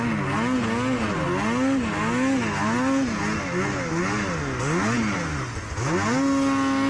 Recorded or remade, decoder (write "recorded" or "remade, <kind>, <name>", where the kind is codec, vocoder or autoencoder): recorded